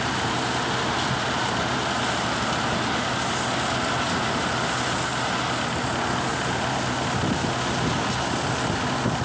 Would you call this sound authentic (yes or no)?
yes